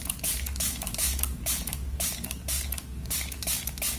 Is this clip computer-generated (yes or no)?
yes